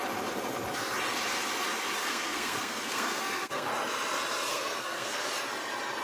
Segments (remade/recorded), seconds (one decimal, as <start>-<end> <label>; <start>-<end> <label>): 0.0-2.0 recorded; 2.0-3.7 remade; 3.7-4.5 recorded; 4.5-5.2 remade; 5.2-6.0 recorded